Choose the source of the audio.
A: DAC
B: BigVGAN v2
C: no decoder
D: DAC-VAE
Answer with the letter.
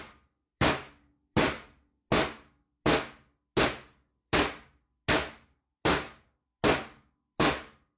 C